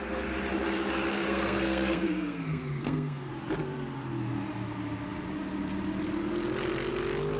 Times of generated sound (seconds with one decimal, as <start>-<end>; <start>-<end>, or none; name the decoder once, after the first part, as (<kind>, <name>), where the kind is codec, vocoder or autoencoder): 1.1-3.3 (codec, SNAC)